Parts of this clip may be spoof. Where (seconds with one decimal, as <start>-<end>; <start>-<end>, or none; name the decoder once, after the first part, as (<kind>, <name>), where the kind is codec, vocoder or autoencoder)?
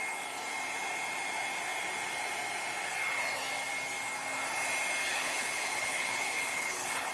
5.1-7.1 (codec, HILCodec)